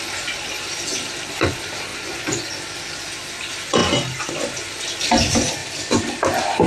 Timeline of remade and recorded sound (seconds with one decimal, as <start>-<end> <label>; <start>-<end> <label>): 0.0-1.9 recorded; 1.9-2.5 remade; 2.5-6.7 recorded